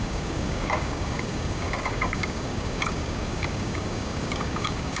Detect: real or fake fake